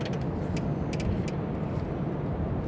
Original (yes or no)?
yes